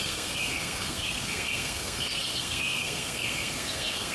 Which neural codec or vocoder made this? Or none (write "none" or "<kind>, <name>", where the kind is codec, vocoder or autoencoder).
codec, SNAC